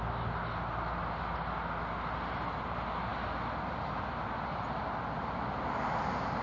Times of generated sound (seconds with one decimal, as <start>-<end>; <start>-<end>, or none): none

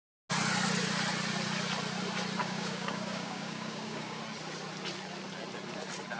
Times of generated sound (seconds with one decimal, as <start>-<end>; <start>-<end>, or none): 2.4-4.2

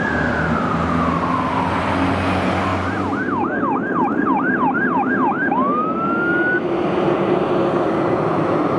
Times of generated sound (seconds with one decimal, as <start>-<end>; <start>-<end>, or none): 2.7-5.1

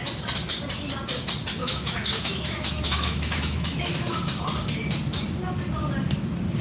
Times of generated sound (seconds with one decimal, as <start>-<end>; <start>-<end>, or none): 1.6-4.3

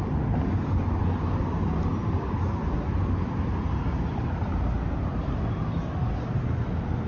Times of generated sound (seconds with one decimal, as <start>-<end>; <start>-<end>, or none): none